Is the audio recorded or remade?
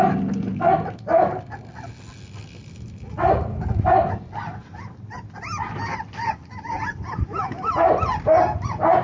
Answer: recorded